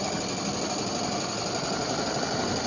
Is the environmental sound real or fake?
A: fake